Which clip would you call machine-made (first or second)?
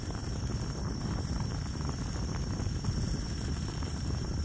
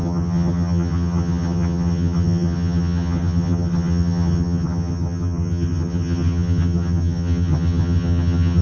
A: second